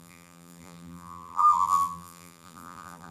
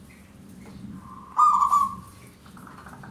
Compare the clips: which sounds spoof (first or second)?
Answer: first